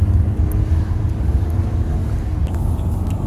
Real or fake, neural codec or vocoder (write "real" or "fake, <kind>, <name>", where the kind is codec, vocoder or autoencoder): fake, codec, DAC